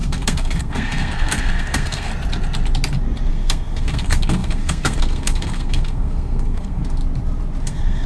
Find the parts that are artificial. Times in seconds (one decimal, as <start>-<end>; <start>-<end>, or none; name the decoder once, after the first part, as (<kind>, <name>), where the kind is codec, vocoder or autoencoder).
0.0-2.1 (codec, SNAC); 3.3-7.0; 7.6-8.1